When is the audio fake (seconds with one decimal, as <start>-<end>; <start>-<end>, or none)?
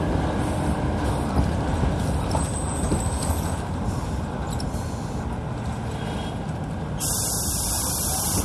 none